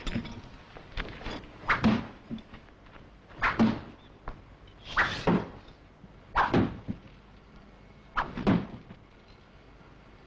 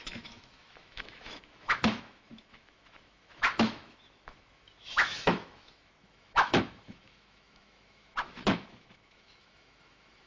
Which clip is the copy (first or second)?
second